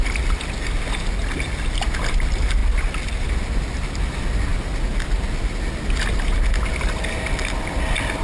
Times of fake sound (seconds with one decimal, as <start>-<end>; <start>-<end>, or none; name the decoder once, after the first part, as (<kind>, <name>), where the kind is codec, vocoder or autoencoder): none